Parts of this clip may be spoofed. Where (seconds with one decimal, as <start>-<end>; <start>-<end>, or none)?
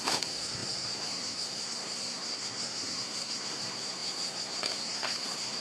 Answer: 0.0-5.6